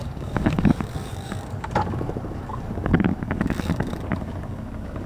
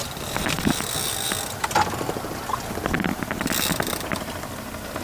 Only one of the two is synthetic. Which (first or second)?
first